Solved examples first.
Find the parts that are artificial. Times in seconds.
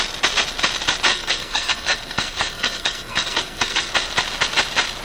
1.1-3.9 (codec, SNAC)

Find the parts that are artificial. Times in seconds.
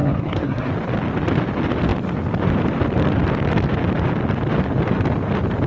0.0-0.7 (codec, SNAC)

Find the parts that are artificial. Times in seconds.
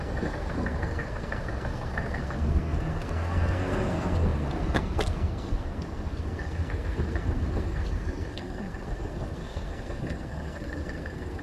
0.0-11.4 (codec, SNAC)